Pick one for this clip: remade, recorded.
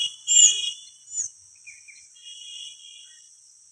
recorded